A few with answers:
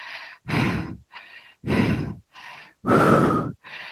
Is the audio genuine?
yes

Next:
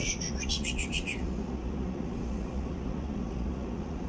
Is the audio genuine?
no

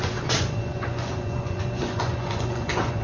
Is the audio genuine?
no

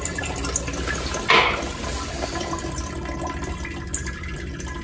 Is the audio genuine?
yes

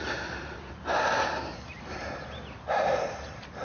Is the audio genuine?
yes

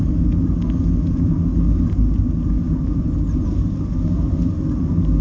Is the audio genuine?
yes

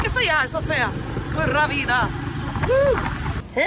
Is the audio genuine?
yes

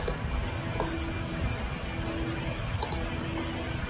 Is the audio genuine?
yes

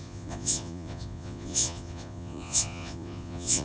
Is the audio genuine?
no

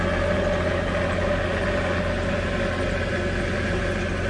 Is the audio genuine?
yes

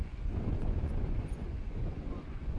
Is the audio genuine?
no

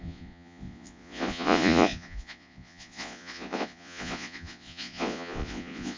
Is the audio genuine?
no